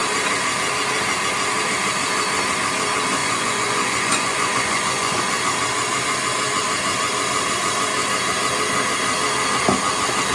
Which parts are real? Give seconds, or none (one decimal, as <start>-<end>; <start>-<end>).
0.0-3.2; 5.2-10.3